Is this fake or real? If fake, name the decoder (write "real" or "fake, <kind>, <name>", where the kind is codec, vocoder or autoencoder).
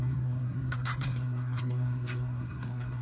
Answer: fake, codec, SNAC